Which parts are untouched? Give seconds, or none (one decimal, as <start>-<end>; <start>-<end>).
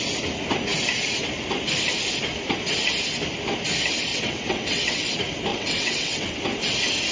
0.0-4.1; 5.1-5.5; 6.3-7.1